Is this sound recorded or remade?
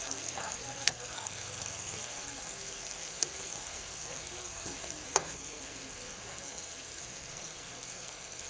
remade